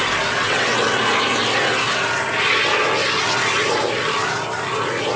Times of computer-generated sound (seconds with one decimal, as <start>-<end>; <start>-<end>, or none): 0.4-1.0